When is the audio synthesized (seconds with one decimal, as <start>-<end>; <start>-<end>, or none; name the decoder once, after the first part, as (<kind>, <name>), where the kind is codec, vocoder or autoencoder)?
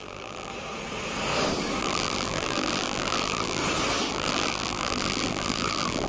0.0-0.5 (vocoder, BigVGAN v2); 1.8-3.6; 4.1-6.1